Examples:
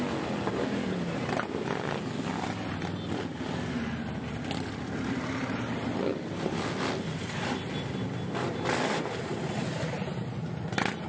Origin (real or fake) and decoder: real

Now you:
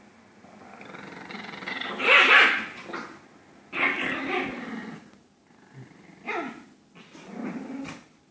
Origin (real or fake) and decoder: real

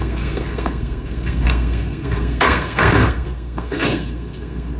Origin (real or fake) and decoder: fake, codec, SNAC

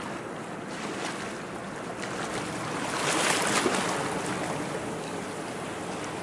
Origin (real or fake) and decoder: real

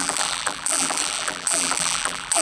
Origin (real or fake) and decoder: fake, vocoder, BigVGAN v2